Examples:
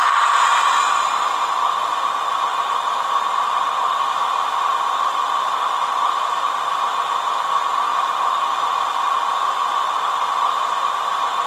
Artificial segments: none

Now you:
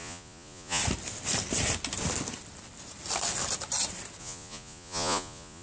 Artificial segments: 0.0-0.8 (vocoder, Vocos); 4.2-5.6

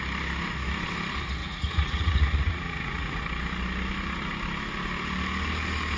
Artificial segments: 1.4-3.2 (vocoder, Vocos)